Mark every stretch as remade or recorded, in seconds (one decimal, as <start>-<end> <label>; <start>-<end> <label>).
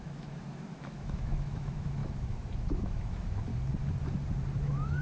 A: 0.0-3.5 remade; 3.5-4.6 recorded; 4.6-5.0 remade